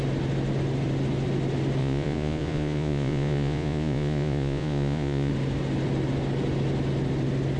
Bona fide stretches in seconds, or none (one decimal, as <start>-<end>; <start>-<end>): 0.0-1.8; 5.3-7.6